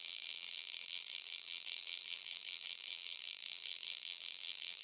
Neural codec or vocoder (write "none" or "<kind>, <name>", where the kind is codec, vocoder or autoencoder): vocoder, BigVGAN v2